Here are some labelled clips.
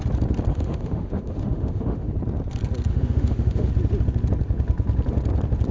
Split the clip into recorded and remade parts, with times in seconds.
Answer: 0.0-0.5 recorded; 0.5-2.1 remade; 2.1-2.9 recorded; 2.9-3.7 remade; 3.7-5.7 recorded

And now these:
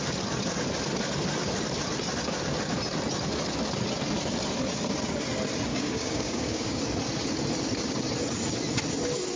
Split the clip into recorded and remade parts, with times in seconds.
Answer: 0.0-5.7 recorded; 5.7-6.8 remade; 6.8-9.4 recorded